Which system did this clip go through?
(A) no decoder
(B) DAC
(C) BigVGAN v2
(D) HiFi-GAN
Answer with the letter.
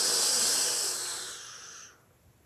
A